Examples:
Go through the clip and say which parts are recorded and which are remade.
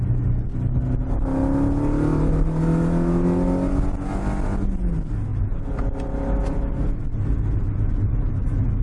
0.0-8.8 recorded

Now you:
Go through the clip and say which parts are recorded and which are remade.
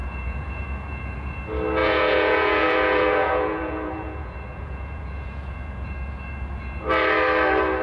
0.0-1.4 remade; 1.4-1.8 recorded; 1.8-5.9 remade; 5.9-7.8 recorded